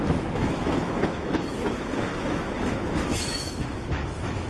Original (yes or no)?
no